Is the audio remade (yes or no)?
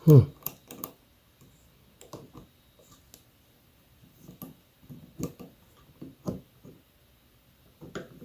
no